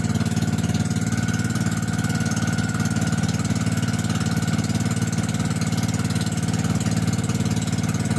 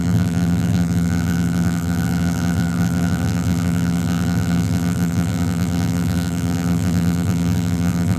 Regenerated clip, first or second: second